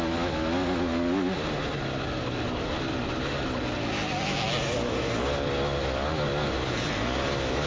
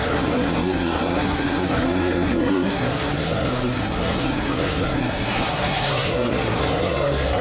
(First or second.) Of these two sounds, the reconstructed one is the second